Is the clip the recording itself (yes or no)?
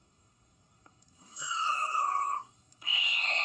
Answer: no